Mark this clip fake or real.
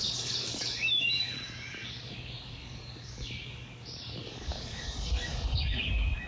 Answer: fake